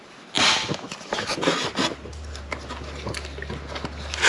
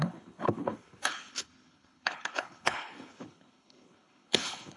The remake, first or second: second